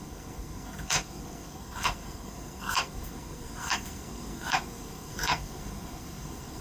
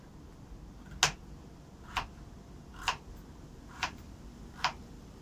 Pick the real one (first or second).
second